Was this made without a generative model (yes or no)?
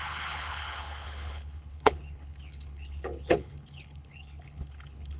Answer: no